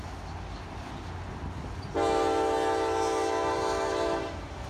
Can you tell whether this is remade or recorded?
recorded